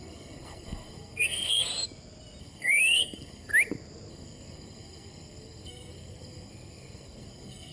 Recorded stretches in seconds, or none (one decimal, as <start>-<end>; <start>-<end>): 1.7-2.4; 3.5-4.1

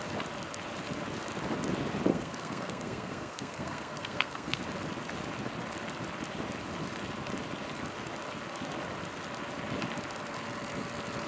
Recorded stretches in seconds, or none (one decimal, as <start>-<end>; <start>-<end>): 0.0-2.1; 4.6-11.3

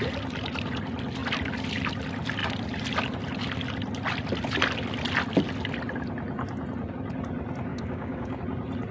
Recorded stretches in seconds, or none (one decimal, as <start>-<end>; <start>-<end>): 0.0-7.7; 8.4-8.9